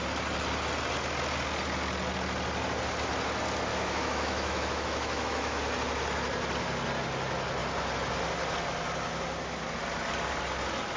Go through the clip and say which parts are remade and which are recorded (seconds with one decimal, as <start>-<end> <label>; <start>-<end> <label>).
0.0-3.7 recorded; 3.7-5.6 remade; 5.6-11.0 recorded